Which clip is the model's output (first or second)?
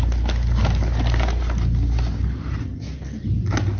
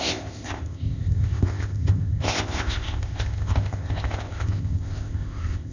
second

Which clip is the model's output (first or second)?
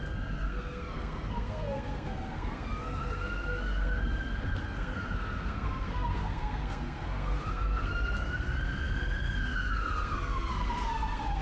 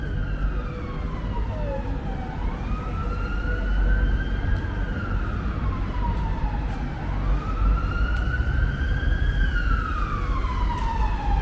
first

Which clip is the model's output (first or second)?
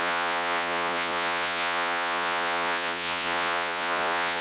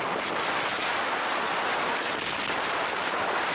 first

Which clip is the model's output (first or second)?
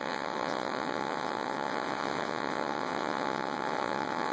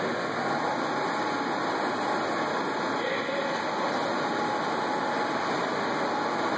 first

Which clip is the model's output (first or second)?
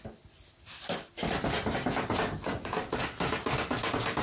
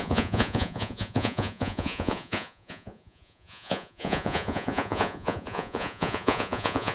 second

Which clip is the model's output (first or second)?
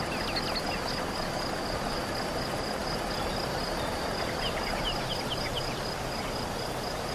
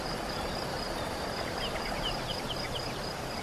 second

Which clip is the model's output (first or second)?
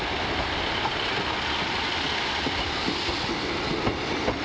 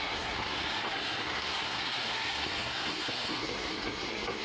second